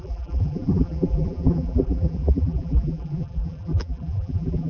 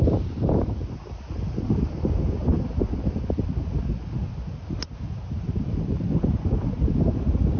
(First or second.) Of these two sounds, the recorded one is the second